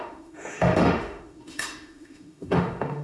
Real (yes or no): no